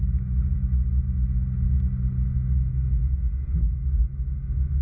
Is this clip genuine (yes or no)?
yes